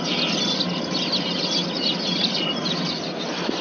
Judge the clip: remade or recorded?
recorded